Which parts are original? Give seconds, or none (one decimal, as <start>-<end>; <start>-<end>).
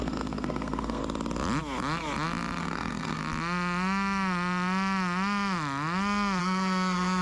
1.0-2.6; 3.2-6.4